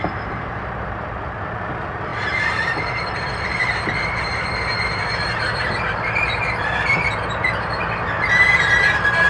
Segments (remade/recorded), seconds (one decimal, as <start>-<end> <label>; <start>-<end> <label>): 0.0-9.3 remade